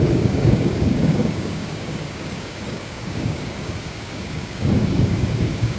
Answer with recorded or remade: remade